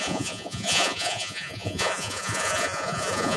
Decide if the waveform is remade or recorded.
remade